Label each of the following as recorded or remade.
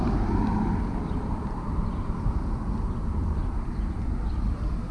remade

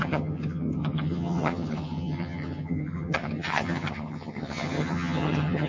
remade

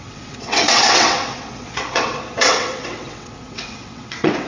remade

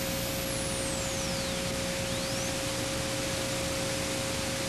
recorded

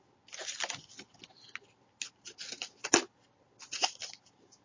recorded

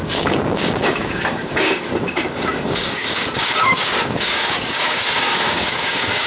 remade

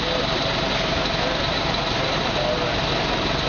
recorded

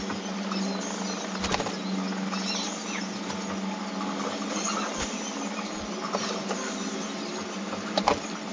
recorded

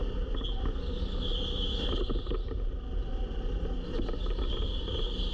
recorded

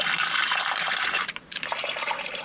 remade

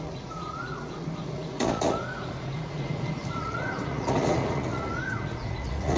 remade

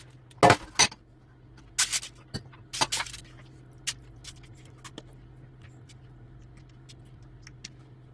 recorded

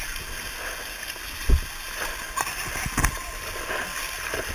recorded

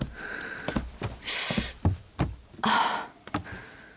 recorded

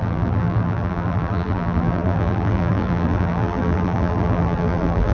remade